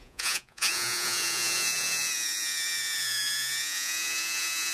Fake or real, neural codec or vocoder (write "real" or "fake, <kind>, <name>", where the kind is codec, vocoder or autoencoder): fake, vocoder, Vocos